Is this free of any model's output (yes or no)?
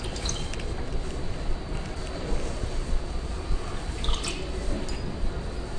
yes